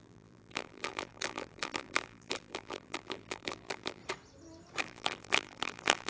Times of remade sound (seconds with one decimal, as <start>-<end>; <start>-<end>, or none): 0.0-4.0; 4.8-6.1